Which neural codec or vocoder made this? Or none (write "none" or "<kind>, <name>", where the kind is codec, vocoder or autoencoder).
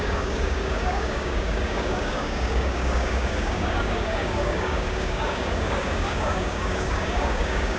codec, DAC